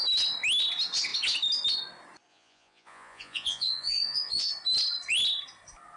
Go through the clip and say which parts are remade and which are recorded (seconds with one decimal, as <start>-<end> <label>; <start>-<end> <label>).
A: 0.0-2.3 recorded; 2.3-4.5 remade; 4.5-6.0 recorded